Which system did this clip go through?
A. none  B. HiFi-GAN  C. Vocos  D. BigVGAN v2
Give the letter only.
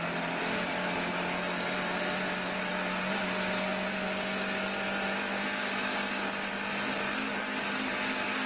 A